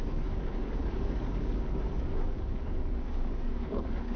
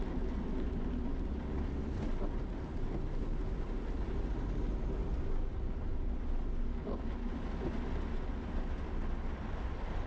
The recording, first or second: second